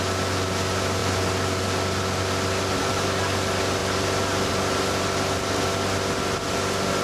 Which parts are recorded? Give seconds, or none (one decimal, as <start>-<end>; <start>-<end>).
0.0-7.0